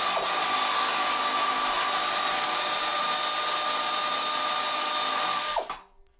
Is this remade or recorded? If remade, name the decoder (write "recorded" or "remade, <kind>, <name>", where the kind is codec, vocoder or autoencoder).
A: recorded